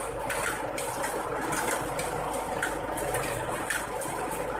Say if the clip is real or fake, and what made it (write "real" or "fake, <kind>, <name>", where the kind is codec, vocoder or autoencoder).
fake, vocoder, BigVGAN v2